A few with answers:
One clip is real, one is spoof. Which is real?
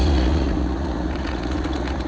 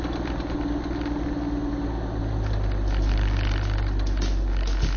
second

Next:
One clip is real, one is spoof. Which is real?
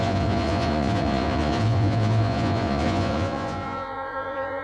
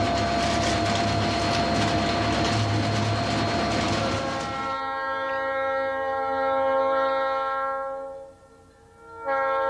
second